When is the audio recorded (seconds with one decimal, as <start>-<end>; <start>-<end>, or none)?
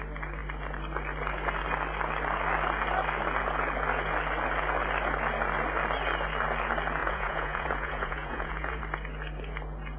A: 0.0-7.0; 8.8-10.0